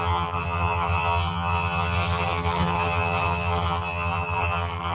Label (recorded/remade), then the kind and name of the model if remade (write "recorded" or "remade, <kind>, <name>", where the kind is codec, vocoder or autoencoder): remade, vocoder, HiFi-GAN